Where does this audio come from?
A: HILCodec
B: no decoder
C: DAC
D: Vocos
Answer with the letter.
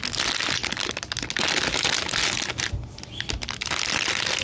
B